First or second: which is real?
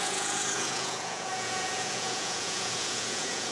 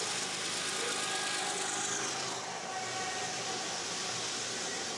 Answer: second